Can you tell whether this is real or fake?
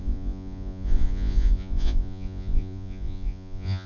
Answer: fake